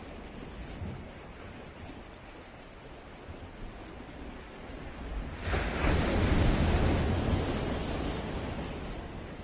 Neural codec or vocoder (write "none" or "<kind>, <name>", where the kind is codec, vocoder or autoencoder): none